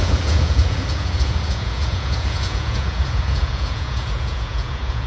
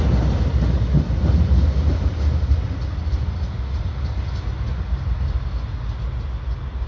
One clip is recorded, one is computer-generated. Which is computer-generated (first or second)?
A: first